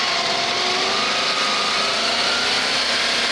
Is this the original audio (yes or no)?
yes